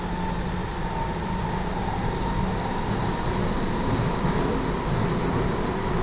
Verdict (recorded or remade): recorded